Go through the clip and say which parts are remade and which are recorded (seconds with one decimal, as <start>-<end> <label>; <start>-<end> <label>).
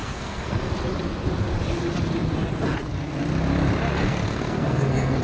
0.0-0.7 remade; 0.7-3.9 recorded; 3.9-5.2 remade